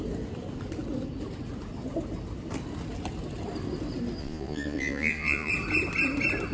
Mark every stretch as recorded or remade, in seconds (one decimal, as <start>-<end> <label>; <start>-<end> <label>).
0.0-4.2 recorded; 4.2-5.5 remade; 5.5-6.5 recorded